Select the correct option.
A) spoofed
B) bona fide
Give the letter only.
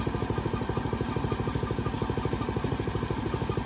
B